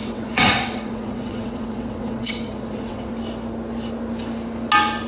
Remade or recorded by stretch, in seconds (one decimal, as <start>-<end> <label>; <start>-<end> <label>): 0.0-3.1 remade; 3.1-5.1 recorded